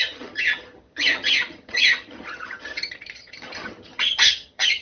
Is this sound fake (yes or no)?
yes